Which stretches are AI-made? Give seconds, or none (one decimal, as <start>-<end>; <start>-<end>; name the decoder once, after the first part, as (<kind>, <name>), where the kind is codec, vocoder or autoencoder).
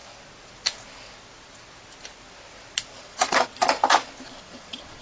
3.0-3.5 (vocoder, Vocos); 4.4-5.0